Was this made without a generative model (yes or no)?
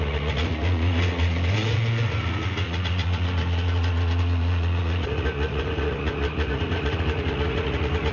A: no